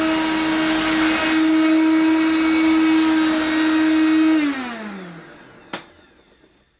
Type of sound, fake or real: real